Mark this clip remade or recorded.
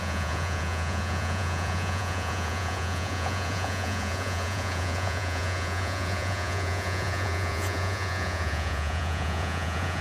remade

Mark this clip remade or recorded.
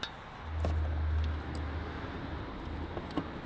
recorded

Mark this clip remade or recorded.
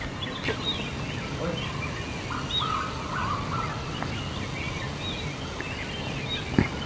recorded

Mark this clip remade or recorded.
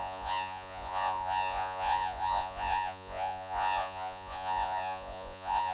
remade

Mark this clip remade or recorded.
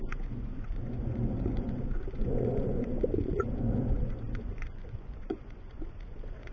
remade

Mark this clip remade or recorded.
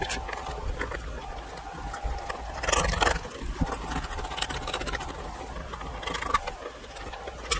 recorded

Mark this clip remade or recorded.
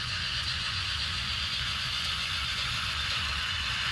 remade